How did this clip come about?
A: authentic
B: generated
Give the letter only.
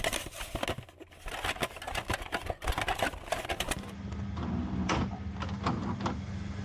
A